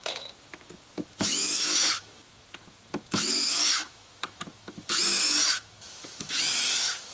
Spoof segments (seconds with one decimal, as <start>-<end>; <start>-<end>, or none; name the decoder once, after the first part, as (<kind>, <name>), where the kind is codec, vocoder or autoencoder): 0.0-7.1 (autoencoder, DAC-VAE)